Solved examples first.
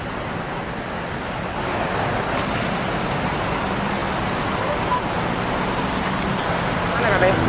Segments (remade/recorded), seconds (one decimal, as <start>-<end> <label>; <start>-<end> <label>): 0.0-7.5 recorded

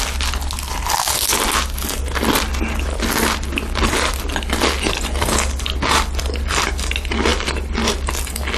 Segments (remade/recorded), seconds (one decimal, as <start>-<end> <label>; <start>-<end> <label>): 0.0-8.6 recorded

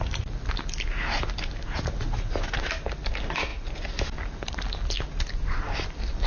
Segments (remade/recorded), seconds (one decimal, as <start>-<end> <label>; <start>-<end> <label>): 0.0-6.3 recorded

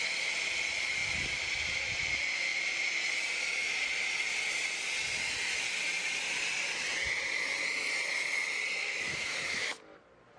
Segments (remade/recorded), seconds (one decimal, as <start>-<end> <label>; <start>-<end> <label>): 0.0-8.8 recorded; 8.8-9.8 remade; 9.8-10.4 recorded

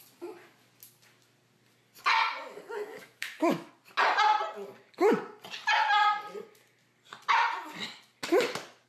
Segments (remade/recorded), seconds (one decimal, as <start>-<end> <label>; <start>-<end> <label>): 0.0-2.9 recorded; 2.9-3.7 remade; 3.7-8.9 recorded